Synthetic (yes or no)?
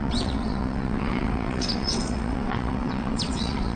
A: yes